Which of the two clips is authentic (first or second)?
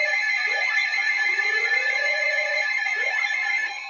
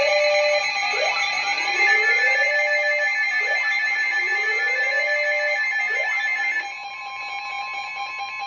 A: second